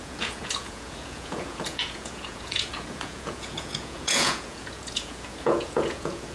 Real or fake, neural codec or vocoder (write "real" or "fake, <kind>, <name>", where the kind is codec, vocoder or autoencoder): fake, vocoder, Vocos